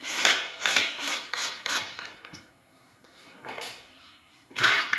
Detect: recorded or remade remade